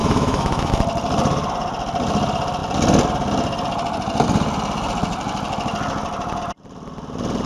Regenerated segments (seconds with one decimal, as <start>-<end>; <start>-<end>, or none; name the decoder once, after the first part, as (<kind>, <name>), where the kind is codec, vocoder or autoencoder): 0.0-0.8 (autoencoder, DAC-VAE)